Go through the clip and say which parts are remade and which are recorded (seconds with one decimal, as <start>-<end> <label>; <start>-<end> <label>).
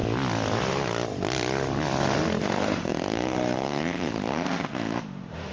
0.0-2.4 recorded; 2.4-5.5 remade